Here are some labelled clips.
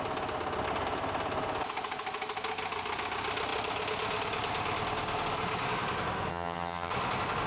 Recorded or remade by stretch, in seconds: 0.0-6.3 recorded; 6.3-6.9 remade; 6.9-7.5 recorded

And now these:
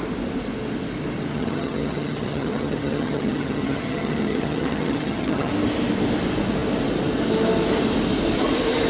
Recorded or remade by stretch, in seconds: 0.0-1.3 recorded; 1.3-5.5 remade; 5.5-8.9 recorded

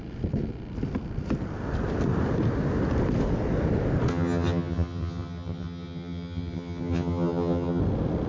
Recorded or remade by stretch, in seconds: 0.0-4.1 recorded; 4.1-7.8 remade; 7.8-8.3 recorded

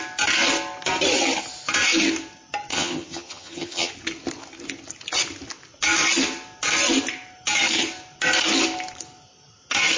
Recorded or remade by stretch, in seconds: 0.0-2.7 recorded; 2.7-3.9 remade; 3.9-10.0 recorded

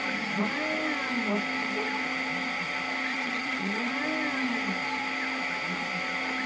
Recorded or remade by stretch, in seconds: 0.0-3.1 recorded; 3.1-3.9 remade; 3.9-6.5 recorded

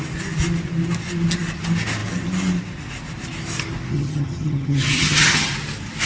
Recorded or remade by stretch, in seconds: 0.0-3.9 recorded; 3.9-5.5 remade; 5.5-6.1 recorded

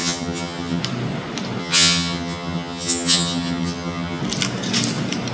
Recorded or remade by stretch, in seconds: 0.0-0.8 remade; 0.8-1.6 recorded; 1.6-4.2 remade; 4.2-5.3 recorded

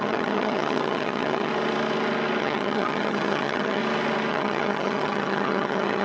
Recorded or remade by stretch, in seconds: 0.0-1.5 remade; 1.5-2.4 recorded; 2.4-3.8 remade; 3.8-4.3 recorded; 4.3-6.0 remade